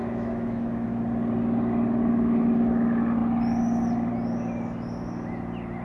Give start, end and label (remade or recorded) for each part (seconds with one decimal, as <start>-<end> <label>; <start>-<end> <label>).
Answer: 0.0-1.0 remade; 1.0-5.8 recorded